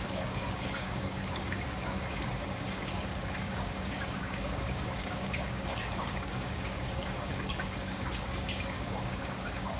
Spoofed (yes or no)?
yes